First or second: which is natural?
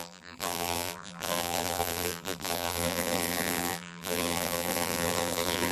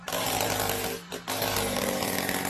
second